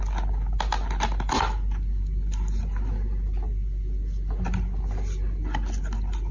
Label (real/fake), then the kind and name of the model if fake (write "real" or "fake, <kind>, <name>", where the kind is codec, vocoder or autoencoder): real